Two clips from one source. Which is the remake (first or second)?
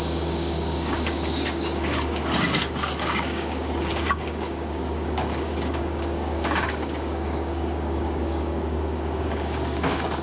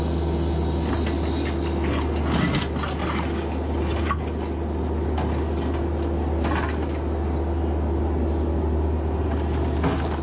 first